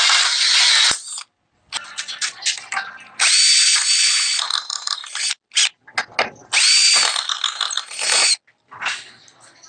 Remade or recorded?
recorded